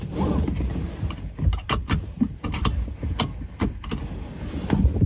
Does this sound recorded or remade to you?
recorded